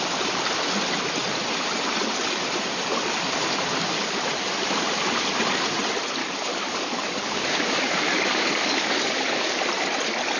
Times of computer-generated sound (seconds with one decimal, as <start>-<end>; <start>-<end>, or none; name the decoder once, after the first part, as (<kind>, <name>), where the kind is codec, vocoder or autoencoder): 6.2-9.6 (codec, DAC)